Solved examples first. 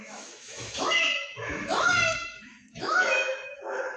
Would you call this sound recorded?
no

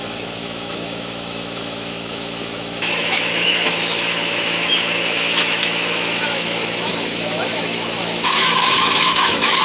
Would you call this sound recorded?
no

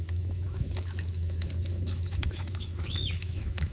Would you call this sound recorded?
no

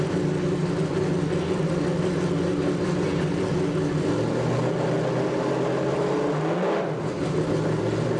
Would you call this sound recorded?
yes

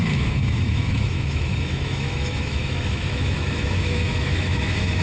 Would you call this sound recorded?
no